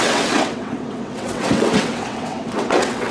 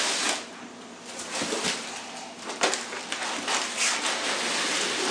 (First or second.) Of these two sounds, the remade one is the first